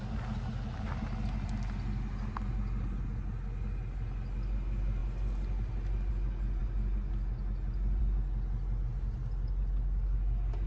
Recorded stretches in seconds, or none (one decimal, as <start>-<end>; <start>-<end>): 0.0-10.7